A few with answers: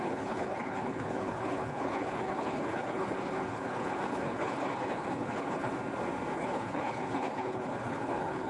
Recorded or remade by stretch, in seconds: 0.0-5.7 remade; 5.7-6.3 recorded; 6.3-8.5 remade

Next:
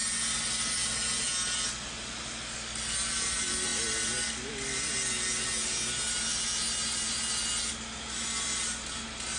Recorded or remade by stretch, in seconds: 0.0-9.4 recorded